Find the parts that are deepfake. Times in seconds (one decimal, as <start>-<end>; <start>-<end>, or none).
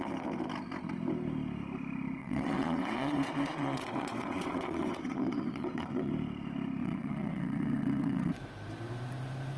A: 2.2-6.1; 6.8-8.3